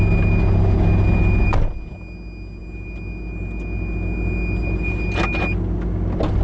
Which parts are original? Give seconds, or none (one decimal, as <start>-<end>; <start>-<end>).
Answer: 0.0-6.4